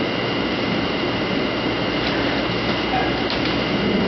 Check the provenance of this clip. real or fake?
real